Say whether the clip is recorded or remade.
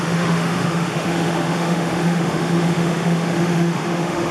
remade